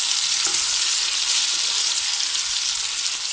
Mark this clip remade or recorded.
recorded